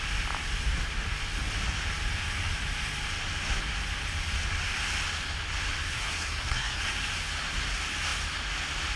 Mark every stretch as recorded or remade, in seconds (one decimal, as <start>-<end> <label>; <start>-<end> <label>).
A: 0.0-5.9 recorded; 5.9-6.8 remade; 6.8-9.0 recorded